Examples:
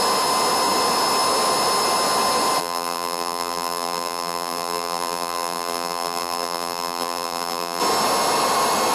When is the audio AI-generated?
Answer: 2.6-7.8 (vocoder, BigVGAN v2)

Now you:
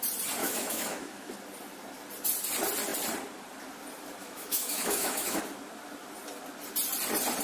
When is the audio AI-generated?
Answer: 0.4-1.3 (autoencoder, DAC-VAE); 4.2-5.4

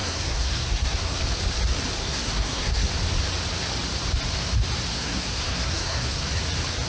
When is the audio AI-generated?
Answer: 0.0-1.2 (codec, SNAC); 2.0-2.9; 4.9-6.4

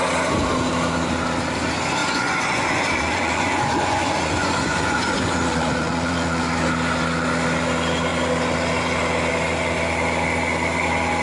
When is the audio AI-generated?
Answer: 2.0-6.4 (vocoder, Vocos)

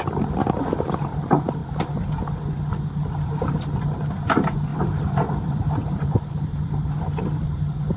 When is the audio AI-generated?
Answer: 4.7-6.3 (vocoder, BigVGAN v2)

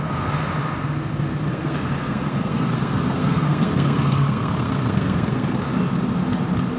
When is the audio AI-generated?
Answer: 1.5-5.6 (codec, SNAC)

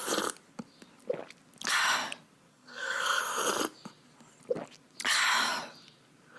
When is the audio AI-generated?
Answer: 2.5-3.2 (codec, SNAC)